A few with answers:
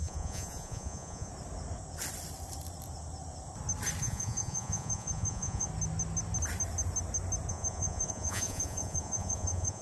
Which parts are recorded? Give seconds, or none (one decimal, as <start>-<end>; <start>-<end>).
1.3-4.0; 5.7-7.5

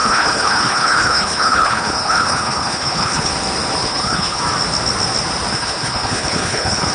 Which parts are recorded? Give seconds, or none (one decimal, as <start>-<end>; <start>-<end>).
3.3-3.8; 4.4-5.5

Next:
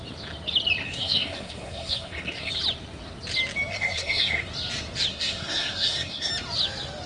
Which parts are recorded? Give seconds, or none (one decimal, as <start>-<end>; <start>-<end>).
0.0-0.8; 2.5-3.7; 4.5-5.1; 6.3-7.1

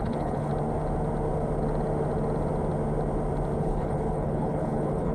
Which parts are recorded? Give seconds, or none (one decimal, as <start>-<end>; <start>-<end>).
0.5-3.6

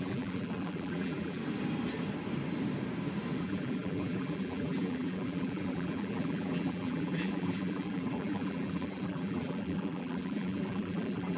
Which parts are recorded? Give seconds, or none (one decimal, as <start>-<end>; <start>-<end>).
1.4-3.4

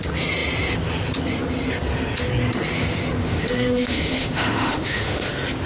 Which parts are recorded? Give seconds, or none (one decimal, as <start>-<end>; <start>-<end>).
0.0-3.2; 5.3-5.7